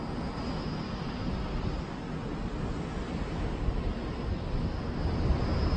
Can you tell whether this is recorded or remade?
recorded